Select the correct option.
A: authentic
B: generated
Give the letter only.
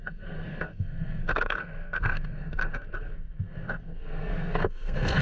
B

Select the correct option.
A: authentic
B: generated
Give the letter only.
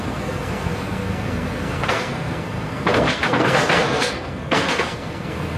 B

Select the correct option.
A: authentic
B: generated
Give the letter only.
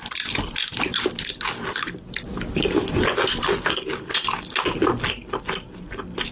A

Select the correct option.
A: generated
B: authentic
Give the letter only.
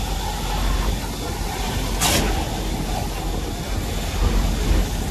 B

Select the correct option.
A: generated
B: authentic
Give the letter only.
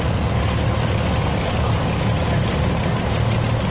B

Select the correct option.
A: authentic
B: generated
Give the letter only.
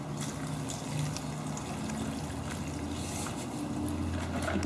A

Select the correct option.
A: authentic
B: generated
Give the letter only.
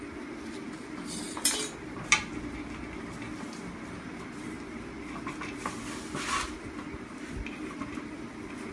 A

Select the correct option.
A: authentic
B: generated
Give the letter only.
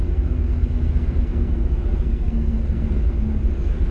B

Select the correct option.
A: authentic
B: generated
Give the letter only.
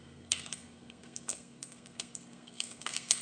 B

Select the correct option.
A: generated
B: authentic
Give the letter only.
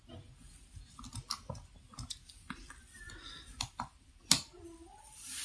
B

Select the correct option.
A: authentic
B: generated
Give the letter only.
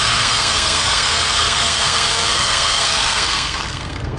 B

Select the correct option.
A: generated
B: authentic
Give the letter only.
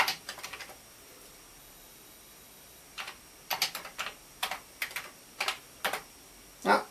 B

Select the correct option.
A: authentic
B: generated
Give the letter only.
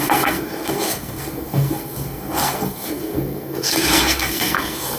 B